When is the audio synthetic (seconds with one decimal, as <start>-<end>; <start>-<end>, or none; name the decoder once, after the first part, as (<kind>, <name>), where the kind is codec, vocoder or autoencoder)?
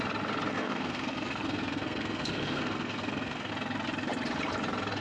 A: 0.5-3.5 (codec, SNAC)